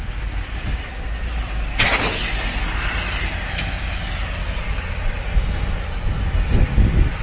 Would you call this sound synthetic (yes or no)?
no